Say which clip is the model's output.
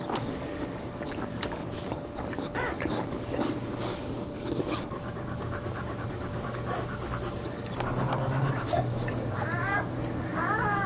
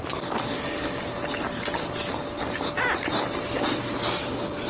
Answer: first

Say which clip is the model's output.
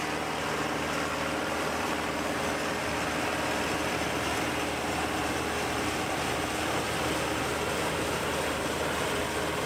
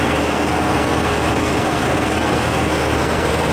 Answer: second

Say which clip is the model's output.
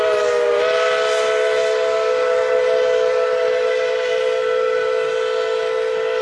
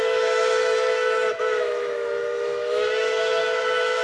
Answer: second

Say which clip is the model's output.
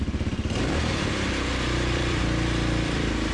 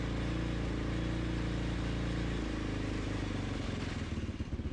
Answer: first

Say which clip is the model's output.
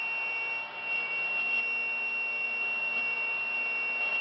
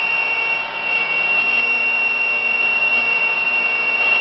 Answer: second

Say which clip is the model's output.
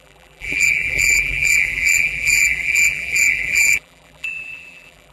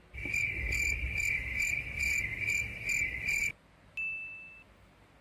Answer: first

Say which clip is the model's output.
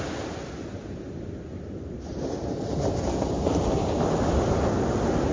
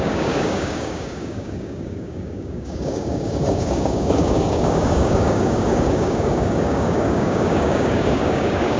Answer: second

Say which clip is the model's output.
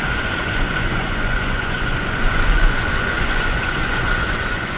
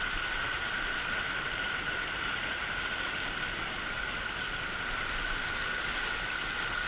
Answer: first